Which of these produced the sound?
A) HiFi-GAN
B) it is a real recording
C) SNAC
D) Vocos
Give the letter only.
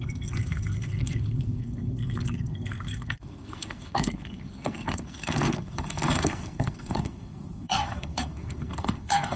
C